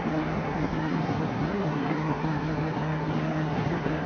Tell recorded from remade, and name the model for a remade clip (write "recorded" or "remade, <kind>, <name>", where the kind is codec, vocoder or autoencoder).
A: remade, codec, SNAC